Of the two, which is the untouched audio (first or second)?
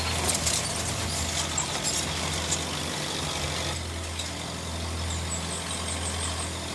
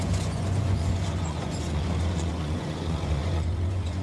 first